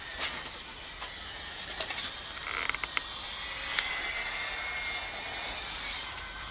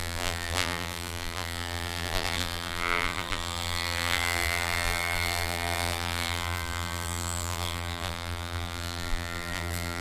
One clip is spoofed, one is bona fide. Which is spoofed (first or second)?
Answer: second